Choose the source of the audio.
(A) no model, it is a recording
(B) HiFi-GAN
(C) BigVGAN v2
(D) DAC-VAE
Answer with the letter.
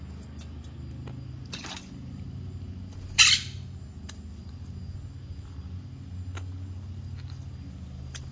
A